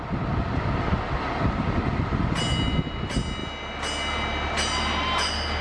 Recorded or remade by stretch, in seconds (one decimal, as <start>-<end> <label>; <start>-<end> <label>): 0.0-5.6 recorded